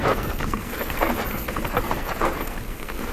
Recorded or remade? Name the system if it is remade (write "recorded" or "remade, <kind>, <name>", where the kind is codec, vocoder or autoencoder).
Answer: remade, codec, SNAC